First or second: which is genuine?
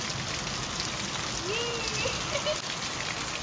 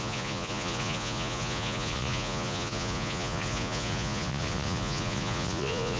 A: first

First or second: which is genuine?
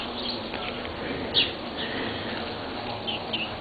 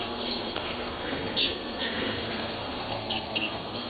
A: first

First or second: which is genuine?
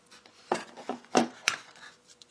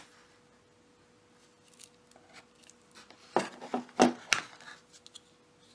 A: second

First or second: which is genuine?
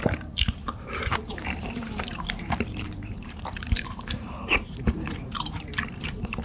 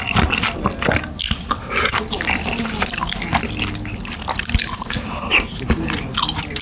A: second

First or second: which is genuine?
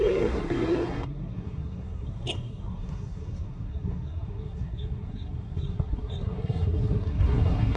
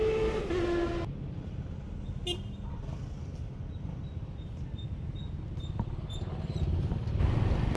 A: second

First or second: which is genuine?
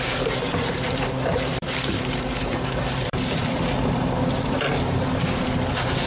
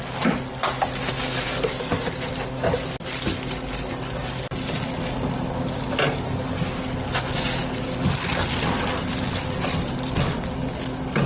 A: second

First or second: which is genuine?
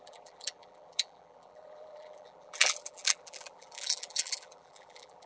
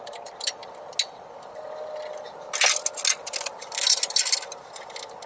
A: second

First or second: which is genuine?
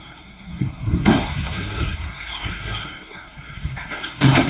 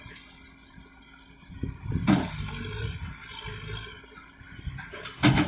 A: second